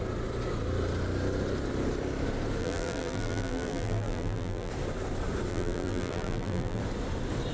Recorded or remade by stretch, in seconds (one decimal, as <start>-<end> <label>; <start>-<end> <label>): 0.0-2.6 recorded; 2.6-4.7 remade; 4.7-5.5 recorded; 5.5-6.8 remade; 6.8-7.5 recorded